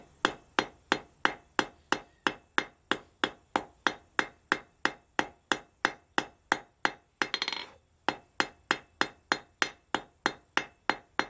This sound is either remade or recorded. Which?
recorded